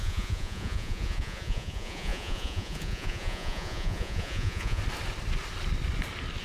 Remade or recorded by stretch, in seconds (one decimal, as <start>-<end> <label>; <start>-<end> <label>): 0.0-4.8 remade; 4.8-6.4 recorded